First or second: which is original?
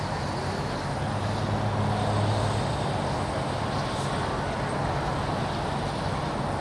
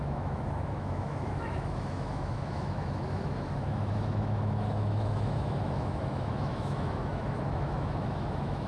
first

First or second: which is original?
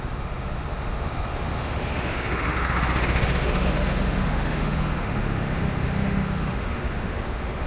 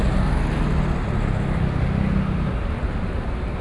second